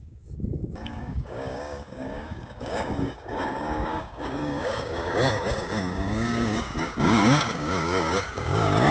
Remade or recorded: remade